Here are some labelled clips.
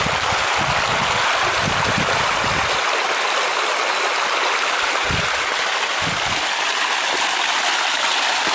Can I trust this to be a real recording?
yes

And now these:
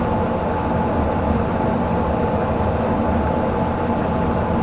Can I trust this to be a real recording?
yes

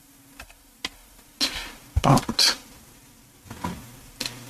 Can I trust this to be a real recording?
yes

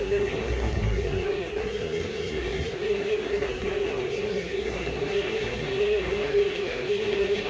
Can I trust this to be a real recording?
no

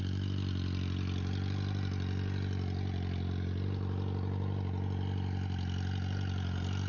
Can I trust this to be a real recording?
yes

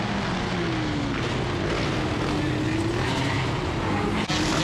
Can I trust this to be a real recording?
yes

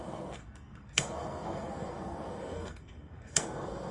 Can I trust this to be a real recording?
no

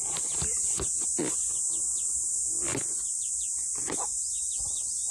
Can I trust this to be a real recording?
yes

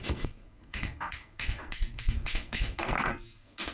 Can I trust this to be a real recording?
no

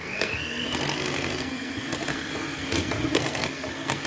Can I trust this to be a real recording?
no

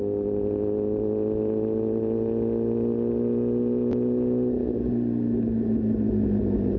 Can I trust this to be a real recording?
yes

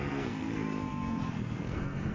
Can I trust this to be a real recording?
no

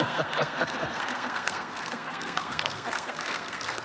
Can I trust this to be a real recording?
no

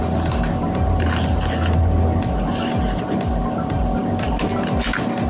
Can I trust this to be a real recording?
yes